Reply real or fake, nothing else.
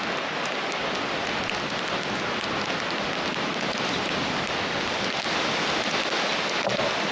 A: real